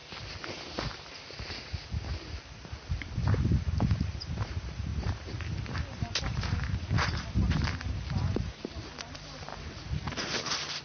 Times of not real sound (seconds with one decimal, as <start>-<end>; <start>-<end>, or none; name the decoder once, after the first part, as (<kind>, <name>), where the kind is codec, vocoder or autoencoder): 4.1-9.5 (vocoder, BigVGAN v2); 10.1-10.8